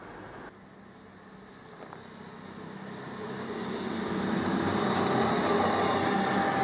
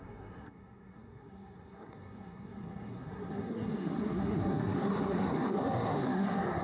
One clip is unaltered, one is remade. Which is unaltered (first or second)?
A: first